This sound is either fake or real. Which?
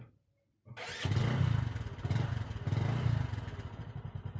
real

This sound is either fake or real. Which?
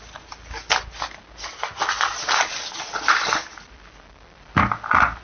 real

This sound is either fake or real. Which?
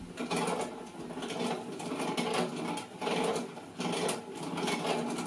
real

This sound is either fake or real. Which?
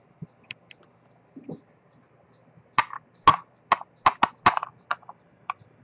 real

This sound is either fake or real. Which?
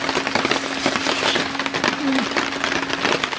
real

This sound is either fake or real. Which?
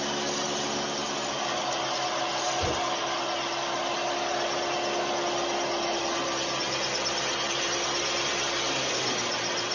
real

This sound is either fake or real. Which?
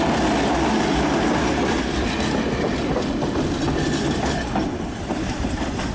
real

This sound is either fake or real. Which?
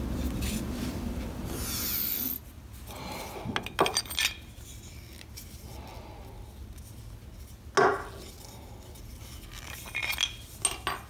real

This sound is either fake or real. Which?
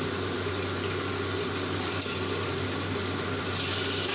real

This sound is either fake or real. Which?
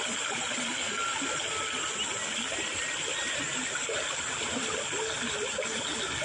real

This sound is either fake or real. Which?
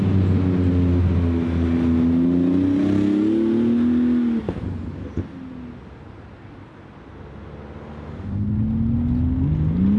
real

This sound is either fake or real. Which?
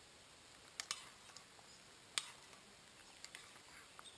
real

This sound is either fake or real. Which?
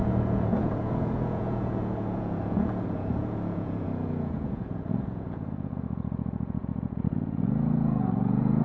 fake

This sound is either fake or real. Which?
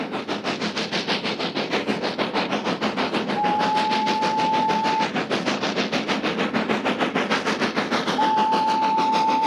real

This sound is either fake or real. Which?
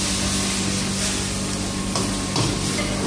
real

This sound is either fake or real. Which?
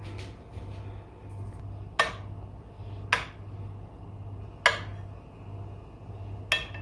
real